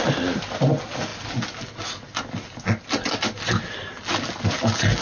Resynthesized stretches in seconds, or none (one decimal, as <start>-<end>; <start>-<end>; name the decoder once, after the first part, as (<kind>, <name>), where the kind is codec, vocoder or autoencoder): none